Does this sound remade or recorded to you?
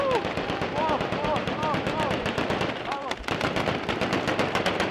recorded